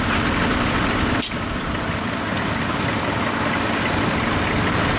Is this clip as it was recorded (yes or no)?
yes